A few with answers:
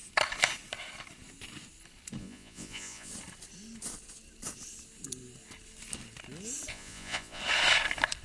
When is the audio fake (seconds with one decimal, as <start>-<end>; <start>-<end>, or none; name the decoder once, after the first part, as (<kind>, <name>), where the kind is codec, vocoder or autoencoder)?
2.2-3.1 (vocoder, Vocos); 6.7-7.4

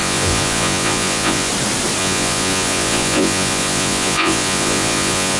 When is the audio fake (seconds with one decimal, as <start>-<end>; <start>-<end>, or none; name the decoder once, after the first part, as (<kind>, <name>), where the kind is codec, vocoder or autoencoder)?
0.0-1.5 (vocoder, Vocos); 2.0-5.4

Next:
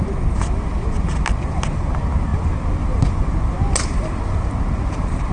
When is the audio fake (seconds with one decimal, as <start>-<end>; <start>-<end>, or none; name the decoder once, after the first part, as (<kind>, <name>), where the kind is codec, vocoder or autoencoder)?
none

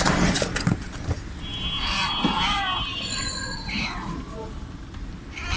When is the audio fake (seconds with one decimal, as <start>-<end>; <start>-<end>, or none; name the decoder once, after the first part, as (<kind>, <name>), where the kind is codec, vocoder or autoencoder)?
2.9-4.2 (vocoder, Vocos)

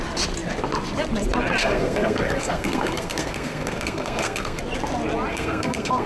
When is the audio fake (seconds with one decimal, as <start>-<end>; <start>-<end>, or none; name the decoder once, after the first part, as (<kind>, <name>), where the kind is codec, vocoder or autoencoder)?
1.6-4.6 (codec, SNAC); 5.3-6.1

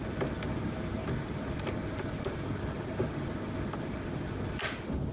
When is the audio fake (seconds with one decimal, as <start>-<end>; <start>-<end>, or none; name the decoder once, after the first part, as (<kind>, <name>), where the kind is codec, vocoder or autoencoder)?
none

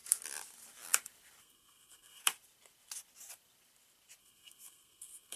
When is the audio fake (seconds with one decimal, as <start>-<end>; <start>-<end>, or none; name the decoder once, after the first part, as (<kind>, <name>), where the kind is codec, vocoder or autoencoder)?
1.4-2.2 (codec, SNAC); 4.2-5.4